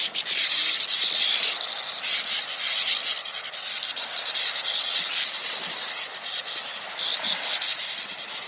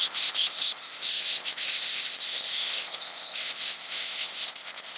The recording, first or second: first